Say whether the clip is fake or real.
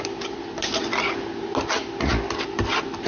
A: real